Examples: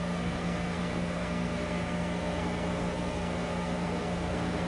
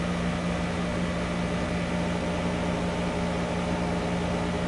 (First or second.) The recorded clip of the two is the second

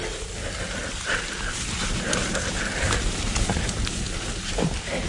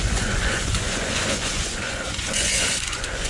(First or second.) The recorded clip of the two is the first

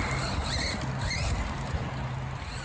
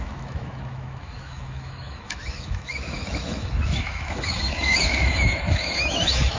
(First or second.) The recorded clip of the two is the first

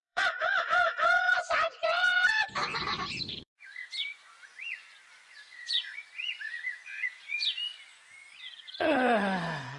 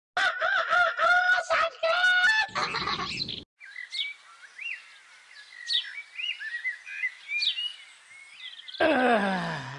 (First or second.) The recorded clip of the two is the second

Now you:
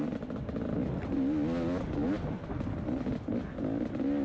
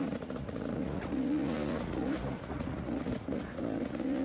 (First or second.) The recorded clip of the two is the first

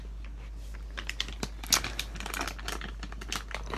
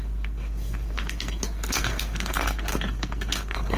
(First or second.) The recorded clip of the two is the first